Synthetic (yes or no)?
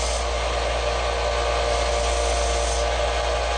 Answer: no